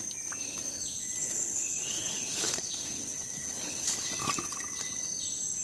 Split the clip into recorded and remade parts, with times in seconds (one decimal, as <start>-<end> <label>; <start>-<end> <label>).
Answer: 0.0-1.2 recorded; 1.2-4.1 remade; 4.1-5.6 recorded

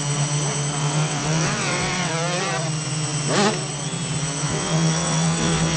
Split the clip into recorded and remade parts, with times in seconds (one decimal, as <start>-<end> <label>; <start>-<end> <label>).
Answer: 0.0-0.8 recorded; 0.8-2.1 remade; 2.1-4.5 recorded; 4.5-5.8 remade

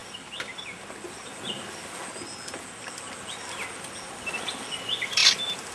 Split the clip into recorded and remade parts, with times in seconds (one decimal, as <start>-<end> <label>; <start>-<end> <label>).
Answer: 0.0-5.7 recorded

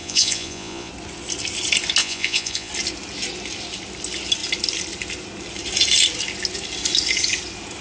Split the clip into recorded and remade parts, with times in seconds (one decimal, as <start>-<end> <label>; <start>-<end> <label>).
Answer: 0.0-0.9 remade; 0.9-2.0 recorded; 2.0-2.7 remade; 2.7-7.8 recorded

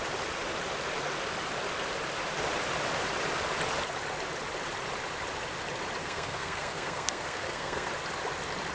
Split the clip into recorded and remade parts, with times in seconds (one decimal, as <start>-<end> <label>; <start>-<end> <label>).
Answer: 0.0-6.0 recorded; 6.0-7.9 remade; 7.9-8.7 recorded

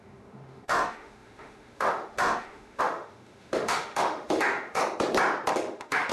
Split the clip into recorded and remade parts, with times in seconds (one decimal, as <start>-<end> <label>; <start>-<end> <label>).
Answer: 0.0-4.8 remade; 4.8-5.5 recorded; 5.5-6.1 remade